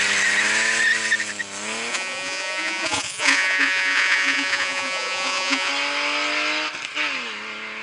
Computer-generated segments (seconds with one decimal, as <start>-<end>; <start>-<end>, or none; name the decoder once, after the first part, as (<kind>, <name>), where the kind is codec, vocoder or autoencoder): 1.9-5.7 (vocoder, Vocos)